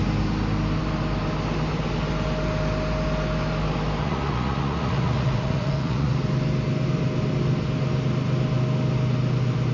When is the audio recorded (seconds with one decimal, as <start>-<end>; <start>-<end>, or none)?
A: 0.0-4.0; 6.1-9.7